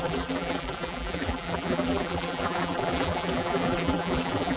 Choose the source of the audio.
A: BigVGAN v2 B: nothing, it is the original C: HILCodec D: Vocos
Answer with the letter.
A